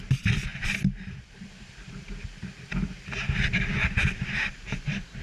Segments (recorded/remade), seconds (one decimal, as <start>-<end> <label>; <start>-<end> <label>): 0.0-0.5 remade; 0.5-3.5 recorded; 3.5-5.2 remade